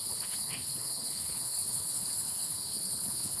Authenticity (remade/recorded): remade